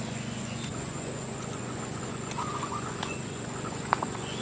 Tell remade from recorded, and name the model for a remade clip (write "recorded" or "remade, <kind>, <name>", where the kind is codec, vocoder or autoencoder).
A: remade, vocoder, Vocos